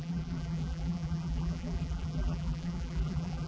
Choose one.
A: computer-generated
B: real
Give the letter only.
A